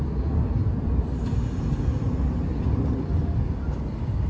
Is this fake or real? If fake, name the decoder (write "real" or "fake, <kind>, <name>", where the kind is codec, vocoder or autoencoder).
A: real